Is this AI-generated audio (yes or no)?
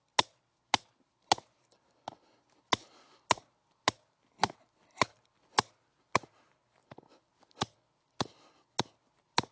no